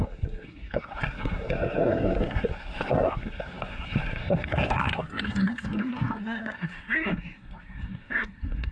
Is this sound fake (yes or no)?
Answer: yes